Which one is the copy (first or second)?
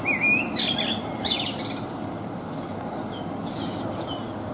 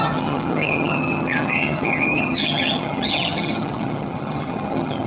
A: second